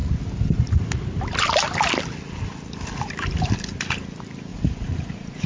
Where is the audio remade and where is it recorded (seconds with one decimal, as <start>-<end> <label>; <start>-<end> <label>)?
0.0-4.5 recorded; 4.5-5.5 remade